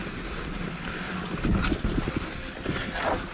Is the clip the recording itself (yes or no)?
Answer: yes